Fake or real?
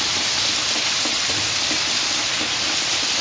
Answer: real